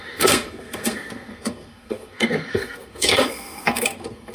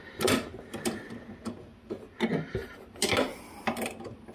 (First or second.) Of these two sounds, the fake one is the first